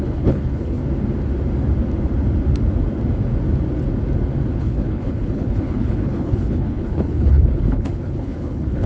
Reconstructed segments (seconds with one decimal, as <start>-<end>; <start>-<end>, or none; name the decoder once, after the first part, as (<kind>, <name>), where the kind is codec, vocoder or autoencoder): 0.0-0.8 (codec, HILCodec); 4.6-8.9